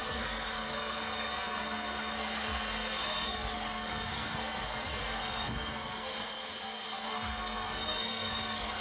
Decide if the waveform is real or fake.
fake